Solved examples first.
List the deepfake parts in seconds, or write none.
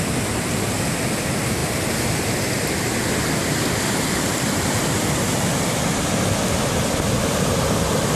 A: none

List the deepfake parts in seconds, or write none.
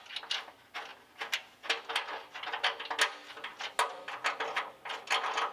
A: none